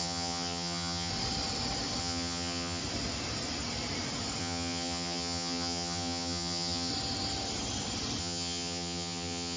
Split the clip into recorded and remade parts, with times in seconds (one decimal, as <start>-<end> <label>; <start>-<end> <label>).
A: 0.0-1.1 remade; 1.1-2.0 recorded; 2.0-2.8 remade; 2.8-4.4 recorded; 4.4-6.9 remade; 6.9-8.2 recorded; 8.2-9.6 remade